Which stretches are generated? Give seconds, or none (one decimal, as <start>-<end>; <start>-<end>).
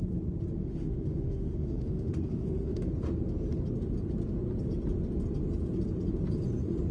0.6-2.9